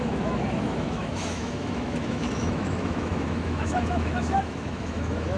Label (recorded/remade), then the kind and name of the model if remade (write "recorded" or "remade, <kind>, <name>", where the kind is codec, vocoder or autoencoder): remade, autoencoder, DAC-VAE